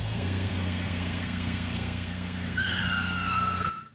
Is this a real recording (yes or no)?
no